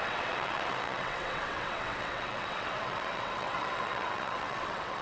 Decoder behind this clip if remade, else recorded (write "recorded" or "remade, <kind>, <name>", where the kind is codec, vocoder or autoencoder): remade, vocoder, WaveNeXt